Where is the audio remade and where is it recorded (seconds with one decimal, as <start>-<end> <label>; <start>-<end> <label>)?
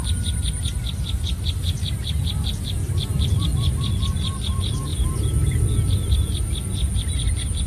0.0-7.7 recorded